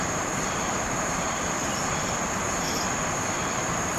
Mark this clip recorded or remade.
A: remade